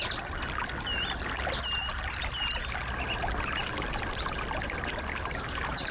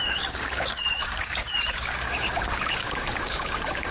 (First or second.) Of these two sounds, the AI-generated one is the second